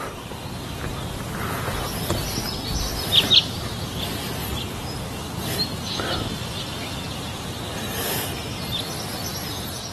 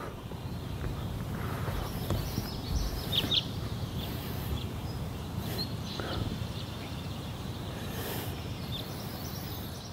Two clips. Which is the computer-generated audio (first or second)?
second